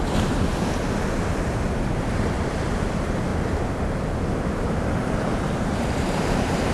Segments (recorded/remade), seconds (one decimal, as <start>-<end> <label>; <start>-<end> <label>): 0.0-0.5 remade; 0.5-2.1 recorded; 2.1-3.3 remade; 3.3-4.5 recorded; 4.5-6.7 remade